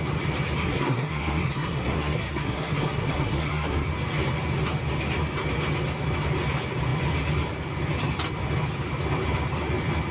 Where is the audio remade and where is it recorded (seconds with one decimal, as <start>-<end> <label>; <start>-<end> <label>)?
0.0-0.6 recorded; 0.6-3.9 remade; 3.9-10.1 recorded

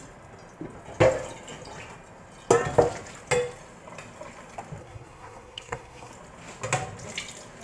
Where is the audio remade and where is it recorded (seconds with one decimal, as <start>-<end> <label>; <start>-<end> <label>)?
0.0-4.8 recorded; 4.8-6.1 remade; 6.1-7.6 recorded

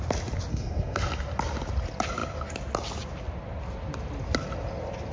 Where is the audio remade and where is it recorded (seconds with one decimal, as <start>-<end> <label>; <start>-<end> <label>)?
0.0-0.5 recorded; 0.5-1.0 remade; 1.0-5.1 recorded

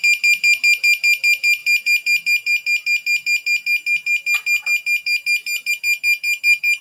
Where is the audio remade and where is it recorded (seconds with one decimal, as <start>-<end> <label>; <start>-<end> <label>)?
0.0-6.8 recorded

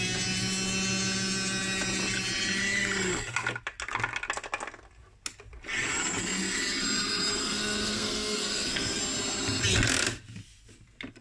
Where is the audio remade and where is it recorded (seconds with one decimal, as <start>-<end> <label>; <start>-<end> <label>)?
0.0-7.4 recorded; 7.4-9.0 remade; 9.0-11.2 recorded

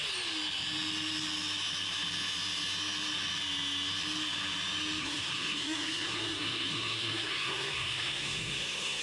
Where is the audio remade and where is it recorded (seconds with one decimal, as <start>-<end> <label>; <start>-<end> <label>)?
0.0-5.0 recorded; 5.0-9.0 remade

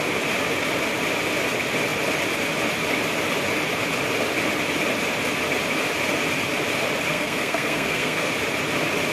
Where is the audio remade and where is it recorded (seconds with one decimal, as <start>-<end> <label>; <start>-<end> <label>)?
0.0-7.1 recorded; 7.1-8.3 remade; 8.3-9.1 recorded